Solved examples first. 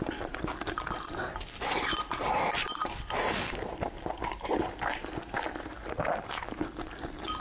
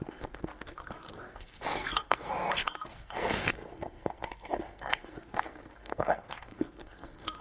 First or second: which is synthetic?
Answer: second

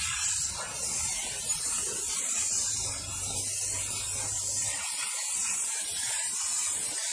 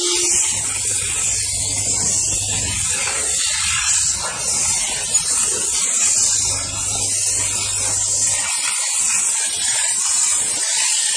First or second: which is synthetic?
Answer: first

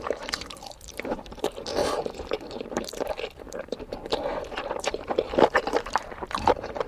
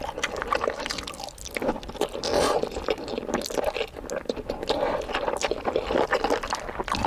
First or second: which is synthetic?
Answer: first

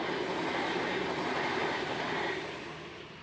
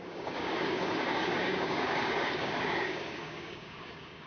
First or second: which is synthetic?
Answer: second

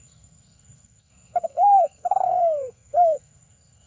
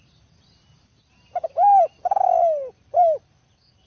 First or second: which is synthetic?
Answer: first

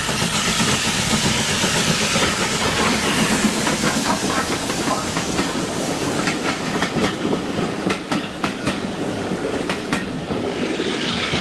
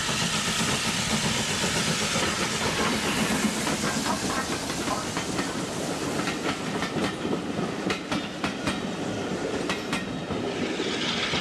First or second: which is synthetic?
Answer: first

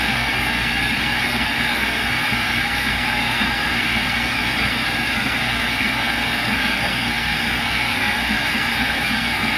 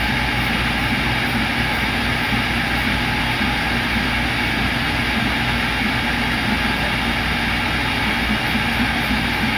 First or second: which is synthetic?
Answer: first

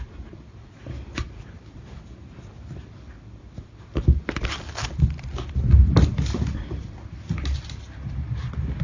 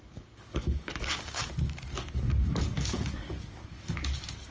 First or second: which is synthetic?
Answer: second